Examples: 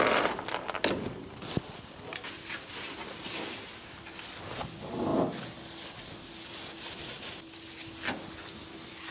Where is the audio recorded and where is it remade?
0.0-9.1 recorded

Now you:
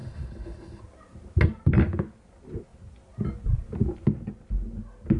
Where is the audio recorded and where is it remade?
0.0-0.8 remade; 0.8-5.2 recorded

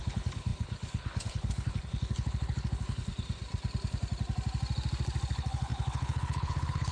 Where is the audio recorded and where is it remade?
0.0-3.1 remade; 3.1-5.3 recorded; 5.3-6.9 remade

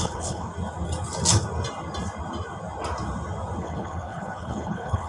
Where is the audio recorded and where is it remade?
0.0-0.5 remade; 0.5-3.6 recorded; 3.6-5.1 remade